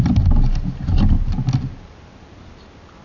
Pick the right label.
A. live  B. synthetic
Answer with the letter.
A